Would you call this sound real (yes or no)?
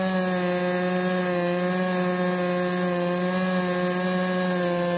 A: yes